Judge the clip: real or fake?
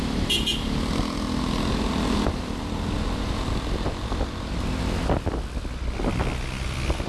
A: real